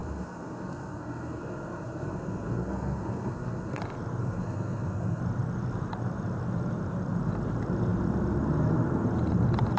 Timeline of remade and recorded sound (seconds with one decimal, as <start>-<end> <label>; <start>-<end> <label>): 0.0-3.8 remade; 3.8-4.2 recorded; 4.2-5.2 remade; 5.2-9.8 recorded